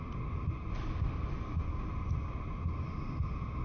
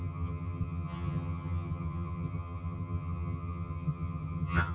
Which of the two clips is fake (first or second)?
second